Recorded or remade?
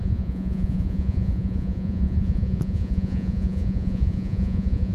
remade